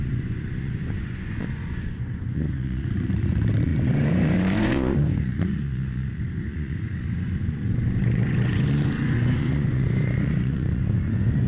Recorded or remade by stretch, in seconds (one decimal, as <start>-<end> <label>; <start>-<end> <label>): 0.0-11.5 remade

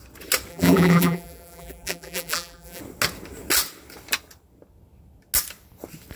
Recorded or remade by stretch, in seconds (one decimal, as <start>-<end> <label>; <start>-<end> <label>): 0.0-0.5 recorded; 0.5-2.8 remade; 2.8-6.2 recorded

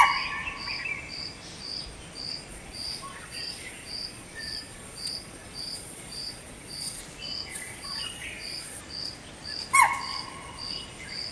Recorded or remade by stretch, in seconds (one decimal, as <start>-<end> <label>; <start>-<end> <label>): 0.0-2.5 recorded; 2.5-7.0 remade; 7.0-7.5 recorded; 7.5-8.8 remade; 8.8-11.3 recorded

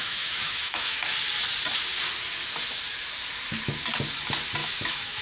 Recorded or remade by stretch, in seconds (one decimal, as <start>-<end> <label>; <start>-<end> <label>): 0.0-1.0 remade; 1.0-4.6 recorded; 4.6-5.2 remade